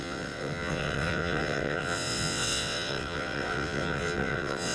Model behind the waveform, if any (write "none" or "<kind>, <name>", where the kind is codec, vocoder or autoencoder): vocoder, WaveNeXt